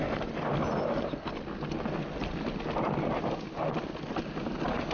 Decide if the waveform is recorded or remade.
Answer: recorded